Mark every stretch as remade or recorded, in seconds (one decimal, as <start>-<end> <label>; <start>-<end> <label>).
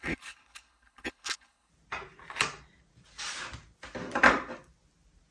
0.0-1.7 remade; 1.7-5.3 recorded